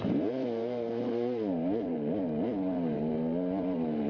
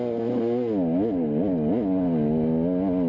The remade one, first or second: first